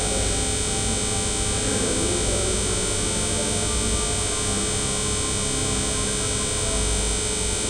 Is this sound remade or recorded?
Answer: recorded